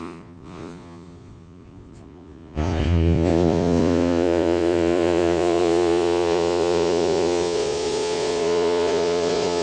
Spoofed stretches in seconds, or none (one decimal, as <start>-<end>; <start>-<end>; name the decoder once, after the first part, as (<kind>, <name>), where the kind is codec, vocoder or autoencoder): 0.0-9.6 (vocoder, Vocos)